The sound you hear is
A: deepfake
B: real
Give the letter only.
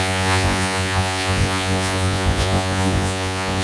A